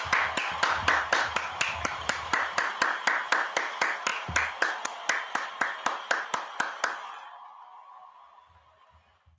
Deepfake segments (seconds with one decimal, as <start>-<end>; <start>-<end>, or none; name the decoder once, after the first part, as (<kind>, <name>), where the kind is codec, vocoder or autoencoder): 0.4-2.7 (vocoder, BigVGAN v2)